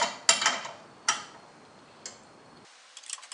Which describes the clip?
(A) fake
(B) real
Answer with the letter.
B